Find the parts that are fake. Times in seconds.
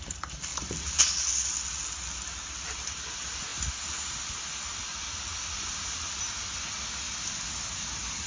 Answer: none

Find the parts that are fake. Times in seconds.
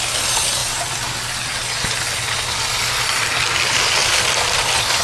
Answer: 4.0-5.0 (vocoder, BigVGAN v2)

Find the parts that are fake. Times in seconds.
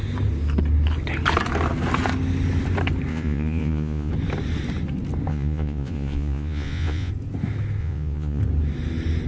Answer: 3.1-4.1 (vocoder, Vocos); 5.3-7.1; 7.8-8.4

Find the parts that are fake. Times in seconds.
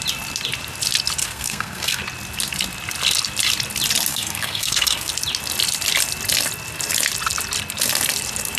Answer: 1.2-2.0 (codec, SNAC); 4.1-5.1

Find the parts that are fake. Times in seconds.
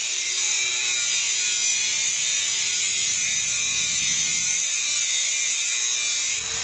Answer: 0.0-0.7 (vocoder, BigVGAN v2); 1.7-5.7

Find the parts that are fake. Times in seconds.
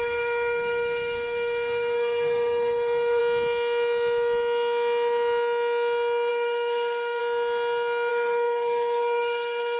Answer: 0.0-3.2 (codec, SNAC); 6.3-7.2; 8.1-9.8